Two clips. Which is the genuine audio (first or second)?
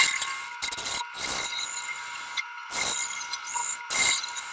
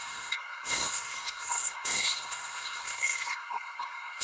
first